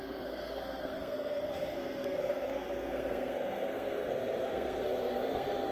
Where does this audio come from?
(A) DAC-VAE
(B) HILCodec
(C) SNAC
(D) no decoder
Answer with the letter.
C